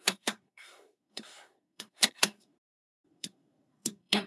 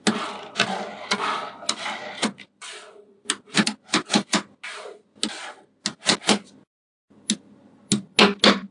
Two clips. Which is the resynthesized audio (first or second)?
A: first